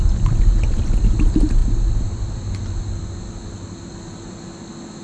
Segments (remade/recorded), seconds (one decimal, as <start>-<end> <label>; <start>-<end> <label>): 0.0-5.0 recorded